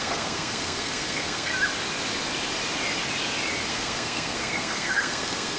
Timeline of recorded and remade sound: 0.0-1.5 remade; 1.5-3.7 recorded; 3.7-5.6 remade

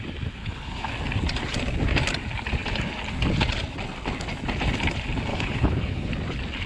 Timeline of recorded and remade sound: 0.0-0.4 recorded; 0.4-0.9 remade; 0.9-5.3 recorded; 5.3-6.1 remade; 6.1-6.7 recorded

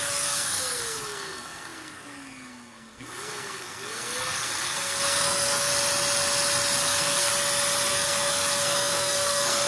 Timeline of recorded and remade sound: 0.0-5.7 remade; 5.7-6.8 recorded; 6.8-7.3 remade; 7.3-7.9 recorded; 7.9-9.7 remade

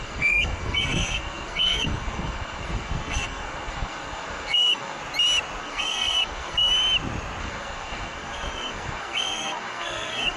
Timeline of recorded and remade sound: 0.0-5.0 remade; 5.0-5.6 recorded; 5.6-6.7 remade; 6.7-7.4 recorded; 7.4-10.4 remade